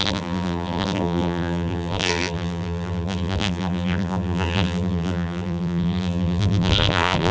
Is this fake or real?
fake